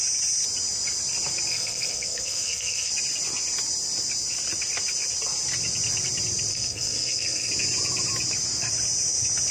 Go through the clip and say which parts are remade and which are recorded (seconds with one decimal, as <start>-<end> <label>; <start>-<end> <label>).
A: 0.0-1.5 recorded; 1.5-2.9 remade; 2.9-6.5 recorded; 6.5-7.5 remade; 7.5-9.5 recorded